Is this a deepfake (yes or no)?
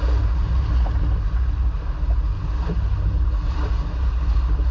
no